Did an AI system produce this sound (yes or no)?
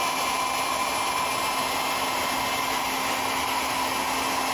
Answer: no